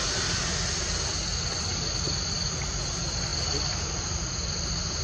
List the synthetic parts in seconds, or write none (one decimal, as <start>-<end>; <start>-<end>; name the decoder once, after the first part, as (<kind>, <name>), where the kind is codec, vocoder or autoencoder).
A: 0.4-1.7 (vocoder, BigVGAN v2)